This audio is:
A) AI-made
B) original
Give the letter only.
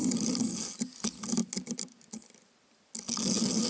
B